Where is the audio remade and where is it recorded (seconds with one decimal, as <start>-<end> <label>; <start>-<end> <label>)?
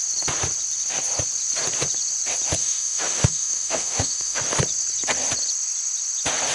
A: 0.0-2.6 recorded; 2.6-4.4 remade; 4.4-6.5 recorded